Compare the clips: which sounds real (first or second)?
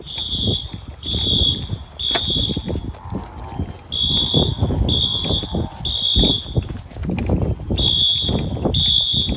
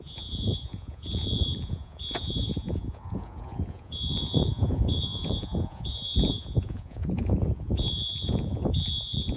first